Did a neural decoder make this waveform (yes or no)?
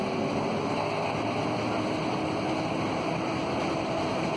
no